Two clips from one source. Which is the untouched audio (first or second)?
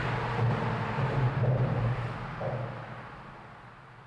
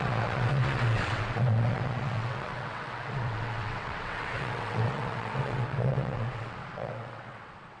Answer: first